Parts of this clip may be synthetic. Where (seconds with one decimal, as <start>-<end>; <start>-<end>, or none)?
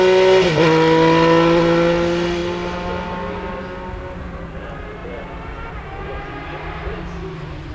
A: none